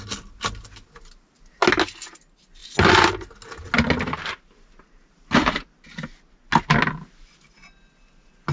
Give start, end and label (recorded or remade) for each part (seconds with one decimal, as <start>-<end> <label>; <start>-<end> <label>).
0.0-8.5 recorded